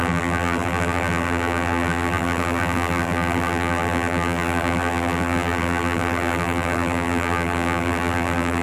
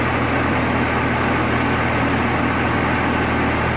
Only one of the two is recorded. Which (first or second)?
second